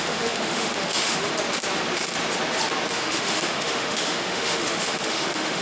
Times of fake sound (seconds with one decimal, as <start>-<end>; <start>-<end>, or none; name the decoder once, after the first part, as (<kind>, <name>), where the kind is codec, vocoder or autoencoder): 0.0-1.3 (autoencoder, DAC-VAE); 2.9-5.6